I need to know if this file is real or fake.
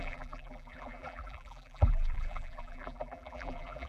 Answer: fake